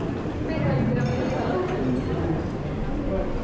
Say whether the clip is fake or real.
real